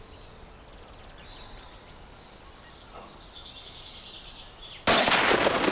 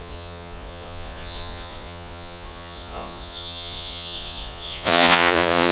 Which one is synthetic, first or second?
second